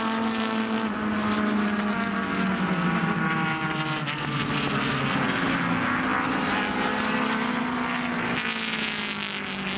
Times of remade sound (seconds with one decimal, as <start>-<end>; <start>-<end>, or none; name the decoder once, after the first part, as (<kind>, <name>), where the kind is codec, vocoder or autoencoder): none

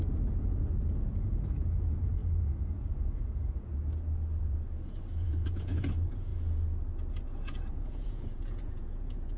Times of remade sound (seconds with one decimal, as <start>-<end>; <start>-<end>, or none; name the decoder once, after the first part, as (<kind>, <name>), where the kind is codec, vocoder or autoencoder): 0.0-3.7 (vocoder, Vocos); 4.4-6.3; 7.1-9.4

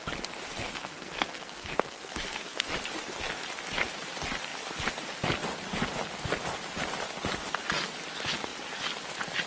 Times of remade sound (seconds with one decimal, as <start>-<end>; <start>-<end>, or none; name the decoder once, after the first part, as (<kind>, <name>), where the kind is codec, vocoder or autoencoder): 0.6-2.7 (codec, SNAC)

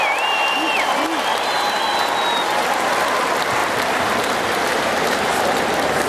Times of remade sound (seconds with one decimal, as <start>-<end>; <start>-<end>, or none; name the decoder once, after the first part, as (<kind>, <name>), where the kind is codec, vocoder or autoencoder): 1.3-1.8 (vocoder, BigVGAN v2); 3.6-6.1

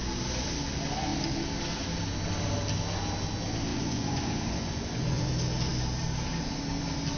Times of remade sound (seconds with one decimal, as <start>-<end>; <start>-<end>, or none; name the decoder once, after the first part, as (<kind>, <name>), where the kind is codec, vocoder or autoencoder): 3.7-5.3 (vocoder, Vocos)